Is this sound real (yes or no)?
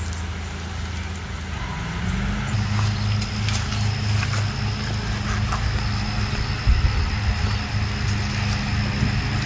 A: yes